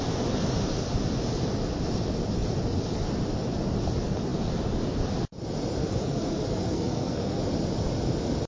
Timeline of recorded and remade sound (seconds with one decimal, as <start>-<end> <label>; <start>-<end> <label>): 0.0-5.8 recorded; 5.8-7.4 remade; 7.4-8.5 recorded